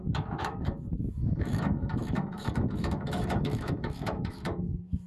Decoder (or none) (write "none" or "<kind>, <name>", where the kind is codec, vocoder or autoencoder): autoencoder, DAC-VAE